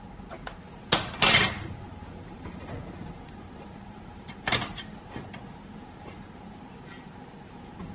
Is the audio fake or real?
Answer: real